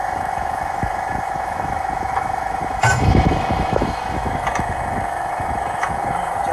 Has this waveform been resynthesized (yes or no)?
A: yes